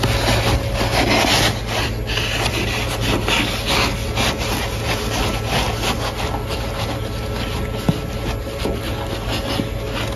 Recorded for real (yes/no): yes